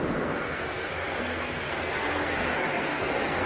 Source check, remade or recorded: remade